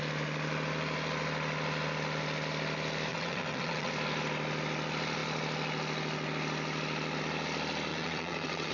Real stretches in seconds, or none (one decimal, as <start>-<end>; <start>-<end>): 0.0-3.1; 3.9-7.9